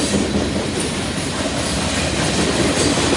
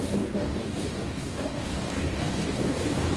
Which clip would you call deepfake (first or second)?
second